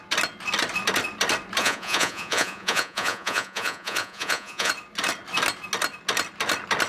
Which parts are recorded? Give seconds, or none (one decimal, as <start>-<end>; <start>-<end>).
0.0-1.6; 4.7-6.9